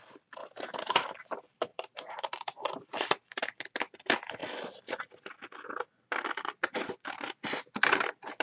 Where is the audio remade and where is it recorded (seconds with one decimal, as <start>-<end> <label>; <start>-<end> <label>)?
0.0-0.4 recorded; 0.4-1.2 remade; 1.2-1.7 recorded; 1.7-3.4 remade; 3.4-8.4 recorded

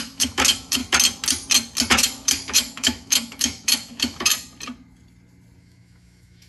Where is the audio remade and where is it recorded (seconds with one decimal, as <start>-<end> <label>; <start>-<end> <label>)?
0.0-0.8 remade; 0.8-1.9 recorded; 1.9-4.3 remade; 4.3-5.6 recorded; 5.6-6.5 remade

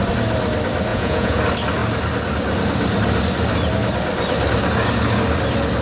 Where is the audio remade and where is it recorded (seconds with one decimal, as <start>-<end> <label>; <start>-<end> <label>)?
0.0-0.9 recorded; 0.9-1.4 remade; 1.4-5.8 recorded